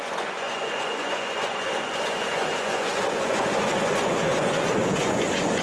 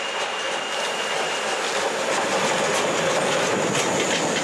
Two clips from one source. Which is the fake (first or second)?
first